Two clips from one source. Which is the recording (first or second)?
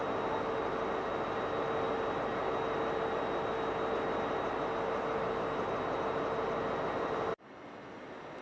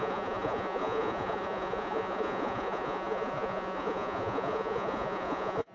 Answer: first